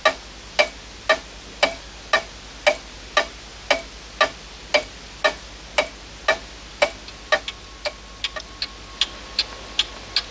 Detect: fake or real real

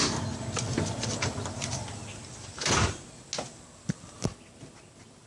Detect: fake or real real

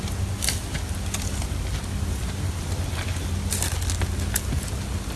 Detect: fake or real real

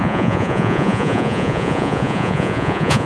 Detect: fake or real fake